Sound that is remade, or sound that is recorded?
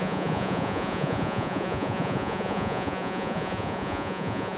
remade